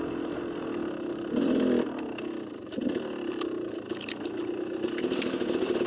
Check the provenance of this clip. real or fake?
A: real